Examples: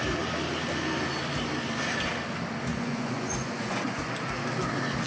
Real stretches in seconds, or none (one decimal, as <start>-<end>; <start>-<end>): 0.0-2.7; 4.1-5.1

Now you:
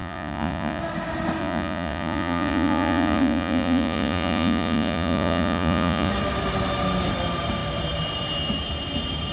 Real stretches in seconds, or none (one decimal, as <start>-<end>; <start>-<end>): 0.8-1.4; 6.1-9.3

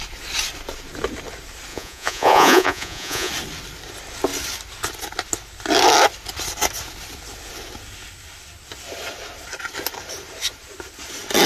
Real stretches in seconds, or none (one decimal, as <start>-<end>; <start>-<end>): 0.0-1.7; 3.3-11.5

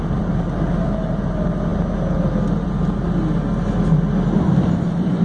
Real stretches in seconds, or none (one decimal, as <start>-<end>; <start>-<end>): 0.0-5.2